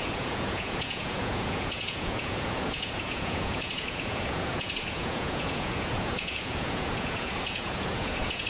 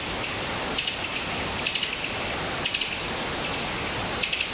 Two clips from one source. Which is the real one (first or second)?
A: second